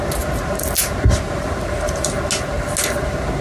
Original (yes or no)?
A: yes